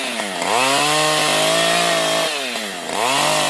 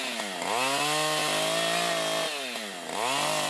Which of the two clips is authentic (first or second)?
second